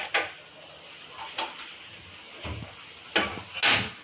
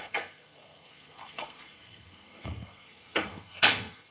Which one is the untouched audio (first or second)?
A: first